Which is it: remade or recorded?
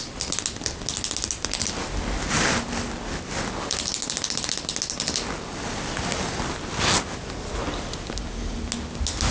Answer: recorded